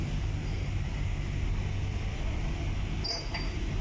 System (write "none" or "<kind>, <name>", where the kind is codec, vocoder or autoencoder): none